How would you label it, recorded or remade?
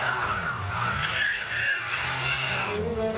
remade